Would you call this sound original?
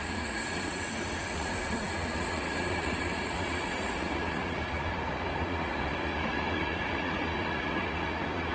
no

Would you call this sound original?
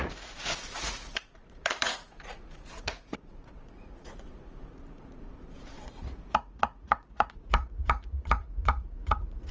no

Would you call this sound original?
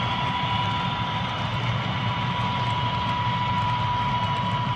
yes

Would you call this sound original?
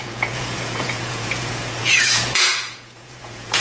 no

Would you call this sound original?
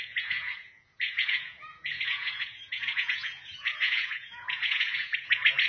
no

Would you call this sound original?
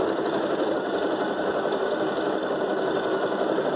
yes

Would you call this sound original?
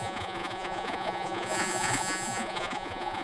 no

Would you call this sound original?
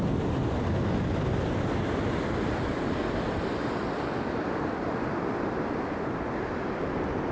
yes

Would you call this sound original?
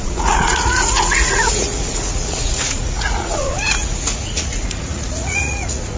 no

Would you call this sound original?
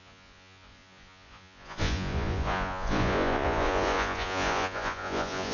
no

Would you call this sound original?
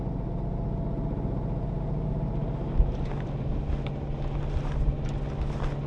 yes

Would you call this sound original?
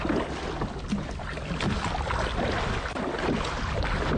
yes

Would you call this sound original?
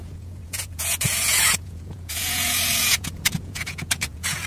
no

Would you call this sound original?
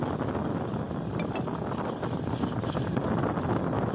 yes